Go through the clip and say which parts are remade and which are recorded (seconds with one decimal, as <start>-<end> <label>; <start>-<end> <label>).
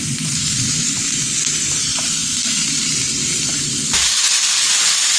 0.0-2.2 recorded; 2.2-3.0 remade; 3.0-5.2 recorded